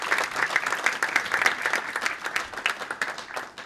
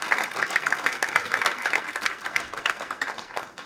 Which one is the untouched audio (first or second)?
first